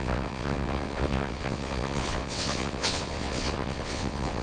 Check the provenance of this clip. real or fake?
fake